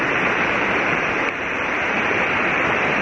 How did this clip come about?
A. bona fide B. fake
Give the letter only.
B